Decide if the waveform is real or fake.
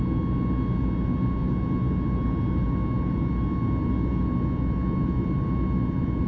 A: real